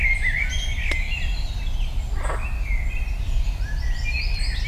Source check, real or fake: real